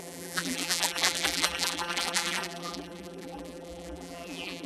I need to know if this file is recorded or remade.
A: remade